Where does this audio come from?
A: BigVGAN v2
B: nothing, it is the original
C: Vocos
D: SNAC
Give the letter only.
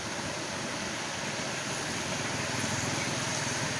B